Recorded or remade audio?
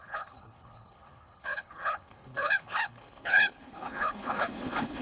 remade